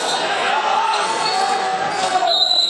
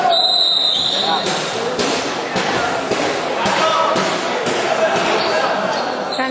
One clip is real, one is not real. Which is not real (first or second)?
first